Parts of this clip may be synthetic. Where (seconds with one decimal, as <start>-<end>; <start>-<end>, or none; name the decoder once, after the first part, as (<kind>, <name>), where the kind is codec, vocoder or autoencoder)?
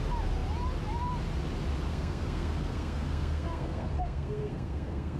1.9-5.2 (codec, SNAC)